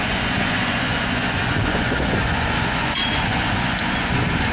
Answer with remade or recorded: remade